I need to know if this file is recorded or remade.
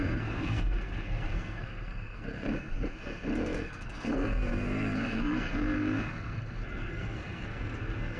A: remade